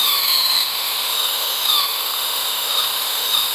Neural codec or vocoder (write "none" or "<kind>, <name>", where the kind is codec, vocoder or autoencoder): autoencoder, DAC-VAE